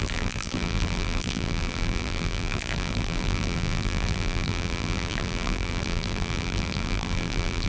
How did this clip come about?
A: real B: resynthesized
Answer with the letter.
B